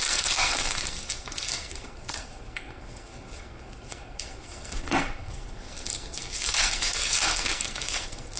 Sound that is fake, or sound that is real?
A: fake